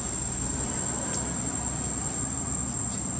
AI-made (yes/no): no